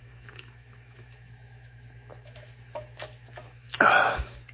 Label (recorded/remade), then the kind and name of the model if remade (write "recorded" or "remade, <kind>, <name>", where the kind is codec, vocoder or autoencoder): remade, autoencoder, DAC-VAE